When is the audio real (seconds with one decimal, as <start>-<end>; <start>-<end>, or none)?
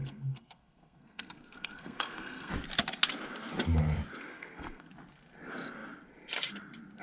2.5-4.3; 4.9-7.0